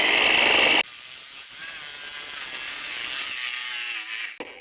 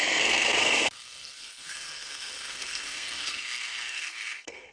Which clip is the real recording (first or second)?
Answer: first